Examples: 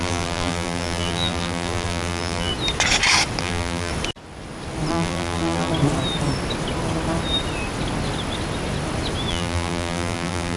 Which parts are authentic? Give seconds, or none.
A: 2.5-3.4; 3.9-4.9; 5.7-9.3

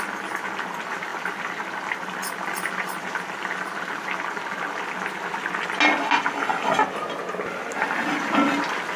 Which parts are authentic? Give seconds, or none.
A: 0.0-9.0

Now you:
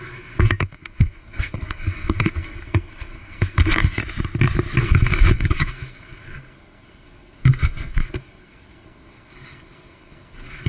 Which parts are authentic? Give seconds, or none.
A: 4.0-4.8